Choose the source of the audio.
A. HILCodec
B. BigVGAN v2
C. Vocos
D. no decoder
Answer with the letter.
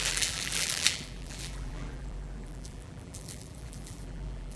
B